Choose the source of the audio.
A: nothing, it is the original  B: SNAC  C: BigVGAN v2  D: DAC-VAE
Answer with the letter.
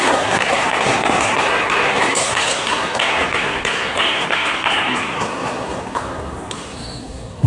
B